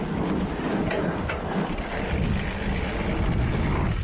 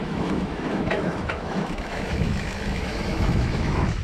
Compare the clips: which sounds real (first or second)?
first